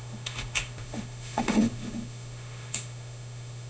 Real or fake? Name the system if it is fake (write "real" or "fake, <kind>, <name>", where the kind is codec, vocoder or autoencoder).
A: fake, autoencoder, DAC-VAE